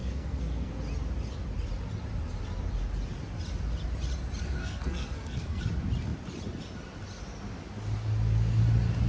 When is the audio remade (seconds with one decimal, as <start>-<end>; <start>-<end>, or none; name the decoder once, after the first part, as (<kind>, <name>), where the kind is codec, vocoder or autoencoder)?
0.0-0.7 (codec, SNAC); 4.6-5.6

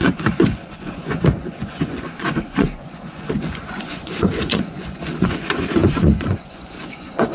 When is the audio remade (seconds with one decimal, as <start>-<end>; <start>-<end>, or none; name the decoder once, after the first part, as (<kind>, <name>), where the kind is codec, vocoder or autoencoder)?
0.0-7.3 (vocoder, Vocos)

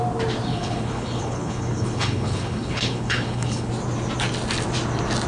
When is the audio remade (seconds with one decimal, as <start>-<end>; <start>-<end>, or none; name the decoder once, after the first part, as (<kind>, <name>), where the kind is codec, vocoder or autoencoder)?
0.5-3.7 (codec, HILCodec)

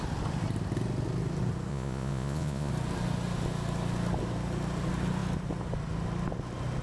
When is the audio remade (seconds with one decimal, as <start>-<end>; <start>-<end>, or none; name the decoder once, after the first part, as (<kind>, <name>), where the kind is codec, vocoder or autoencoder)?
1.7-2.7 (vocoder, Vocos)